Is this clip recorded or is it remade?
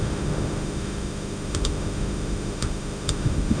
remade